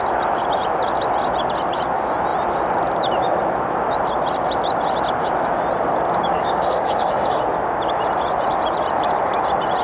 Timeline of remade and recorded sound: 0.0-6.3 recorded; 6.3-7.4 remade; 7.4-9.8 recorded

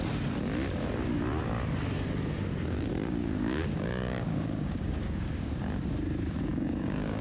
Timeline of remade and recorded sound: 0.0-3.2 recorded; 3.2-5.5 remade; 5.5-6.5 recorded; 6.5-7.2 remade